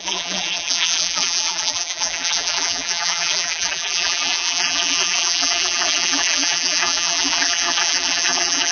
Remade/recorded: remade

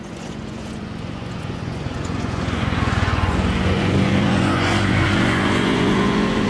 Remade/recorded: remade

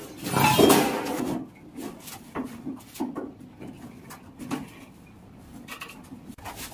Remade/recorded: recorded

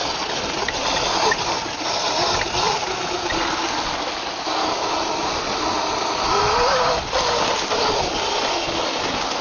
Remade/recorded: recorded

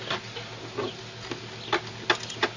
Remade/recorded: recorded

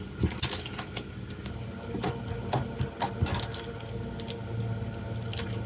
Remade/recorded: recorded